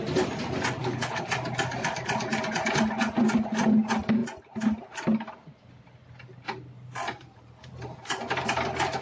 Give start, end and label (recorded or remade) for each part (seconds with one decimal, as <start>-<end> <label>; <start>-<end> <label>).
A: 0.0-0.8 recorded; 0.8-1.3 remade; 1.3-9.0 recorded